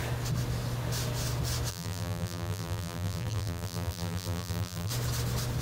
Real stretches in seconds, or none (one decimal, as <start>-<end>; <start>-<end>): 0.0-1.7; 4.9-5.6

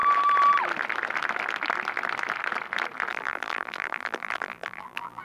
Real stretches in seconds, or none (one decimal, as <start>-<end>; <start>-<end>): 0.0-3.1

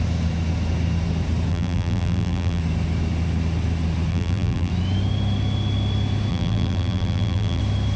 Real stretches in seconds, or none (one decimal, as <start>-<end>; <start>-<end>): 0.0-1.5; 2.6-4.1; 4.7-6.3; 7.6-8.0

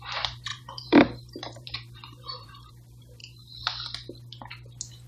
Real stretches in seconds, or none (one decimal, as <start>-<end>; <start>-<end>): 0.0-0.5; 2.7-5.1

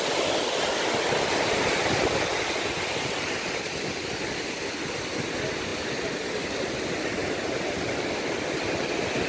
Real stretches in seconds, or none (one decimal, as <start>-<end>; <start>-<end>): 0.0-7.2; 7.8-9.3